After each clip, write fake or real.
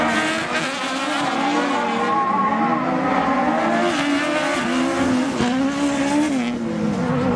real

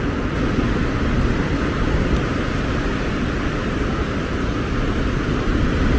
real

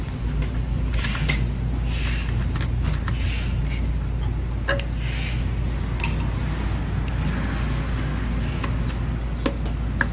real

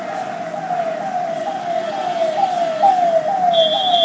real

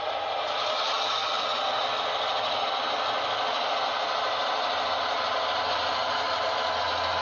real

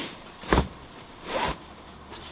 real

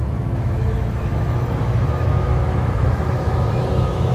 fake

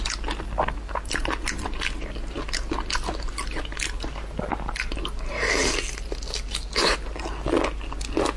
real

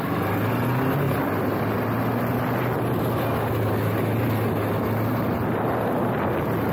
real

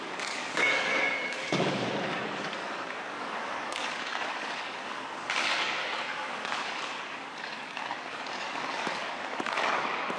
fake